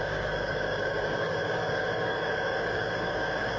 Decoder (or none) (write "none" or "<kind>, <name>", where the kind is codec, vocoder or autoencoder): codec, DAC